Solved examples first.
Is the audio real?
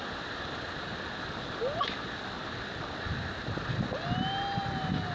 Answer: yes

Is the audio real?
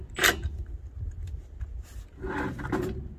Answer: yes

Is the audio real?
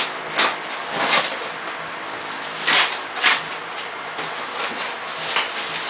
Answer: yes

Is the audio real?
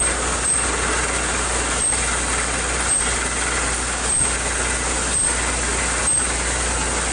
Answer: yes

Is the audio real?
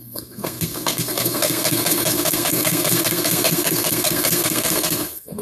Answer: no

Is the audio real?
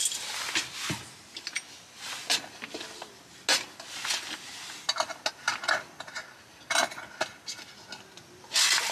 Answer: yes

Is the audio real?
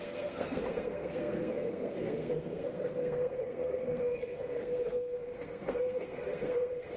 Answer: no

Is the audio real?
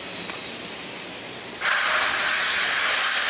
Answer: yes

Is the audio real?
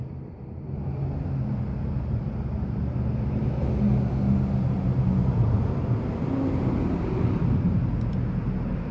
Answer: yes